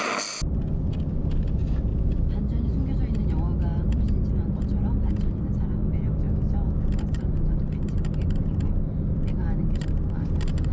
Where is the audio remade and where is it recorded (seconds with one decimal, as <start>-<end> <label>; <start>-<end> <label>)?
0.0-1.9 recorded; 1.9-5.4 remade; 5.4-10.7 recorded

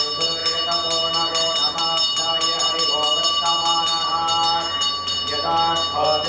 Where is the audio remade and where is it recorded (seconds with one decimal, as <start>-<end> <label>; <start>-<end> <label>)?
0.0-6.3 recorded

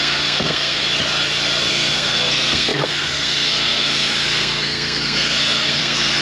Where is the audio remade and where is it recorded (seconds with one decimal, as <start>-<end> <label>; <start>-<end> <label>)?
0.0-0.8 remade; 0.8-1.7 recorded; 1.7-6.2 remade

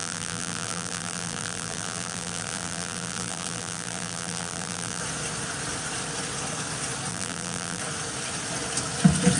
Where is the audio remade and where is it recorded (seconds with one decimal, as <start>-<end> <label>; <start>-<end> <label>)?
0.0-5.0 remade; 5.0-7.1 recorded; 7.1-7.8 remade; 7.8-9.4 recorded